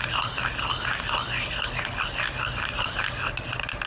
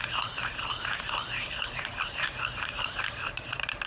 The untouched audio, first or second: first